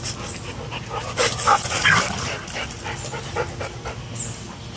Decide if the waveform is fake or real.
real